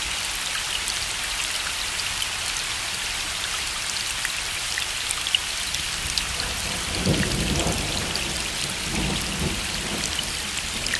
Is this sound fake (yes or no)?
yes